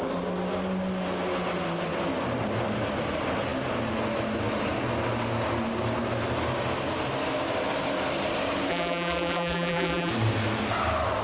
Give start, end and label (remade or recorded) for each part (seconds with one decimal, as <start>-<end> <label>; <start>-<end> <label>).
0.0-8.7 recorded; 8.7-10.1 remade; 10.1-11.2 recorded